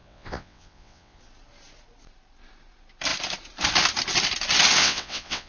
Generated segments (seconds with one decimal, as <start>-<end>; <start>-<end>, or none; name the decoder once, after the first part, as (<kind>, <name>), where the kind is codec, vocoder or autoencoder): 0.0-1.2 (vocoder, WaveNeXt); 4.8-5.5

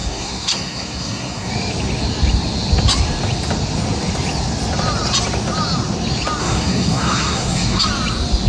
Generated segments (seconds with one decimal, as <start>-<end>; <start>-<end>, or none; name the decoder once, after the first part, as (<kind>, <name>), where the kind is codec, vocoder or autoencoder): 0.0-1.5 (codec, SNAC); 6.4-7.8